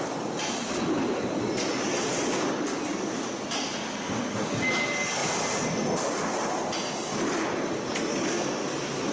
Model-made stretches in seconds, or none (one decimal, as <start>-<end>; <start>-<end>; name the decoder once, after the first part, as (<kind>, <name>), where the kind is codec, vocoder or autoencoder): none